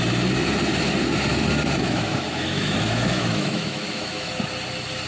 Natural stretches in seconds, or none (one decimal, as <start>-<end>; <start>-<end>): 0.0-1.8; 4.3-5.1

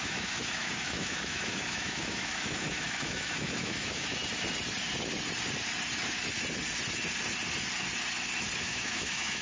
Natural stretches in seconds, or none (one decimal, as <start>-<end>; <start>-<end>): 4.2-8.6

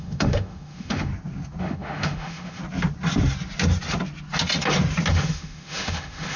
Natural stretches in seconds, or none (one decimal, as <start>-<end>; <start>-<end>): 1.1-1.6; 2.6-5.1